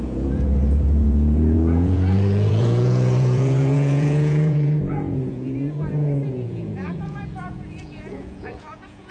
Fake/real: fake